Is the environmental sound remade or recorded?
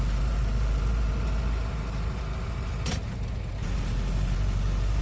recorded